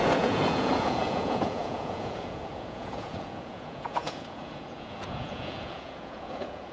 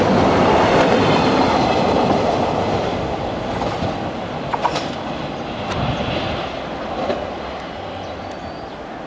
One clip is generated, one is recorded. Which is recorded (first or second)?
second